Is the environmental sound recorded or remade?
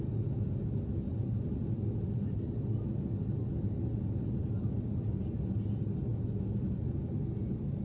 recorded